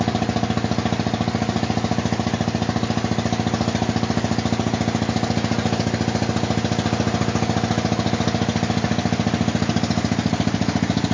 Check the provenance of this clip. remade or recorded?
recorded